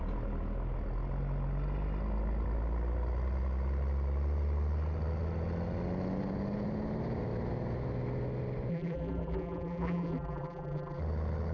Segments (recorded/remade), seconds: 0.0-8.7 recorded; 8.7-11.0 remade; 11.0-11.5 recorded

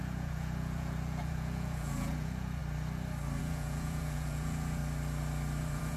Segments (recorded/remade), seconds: 0.0-2.6 remade; 2.6-3.4 recorded; 3.4-4.8 remade; 4.8-5.6 recorded; 5.6-6.0 remade

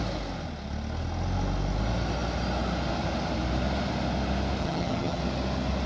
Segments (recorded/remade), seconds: 0.0-4.6 recorded; 4.6-5.2 remade; 5.2-5.9 recorded

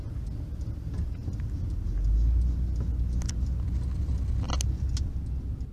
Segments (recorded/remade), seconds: 0.0-5.7 recorded

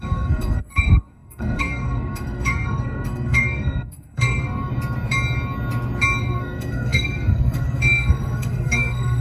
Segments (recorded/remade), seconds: 0.0-4.7 remade; 4.7-6.2 recorded; 6.2-9.2 remade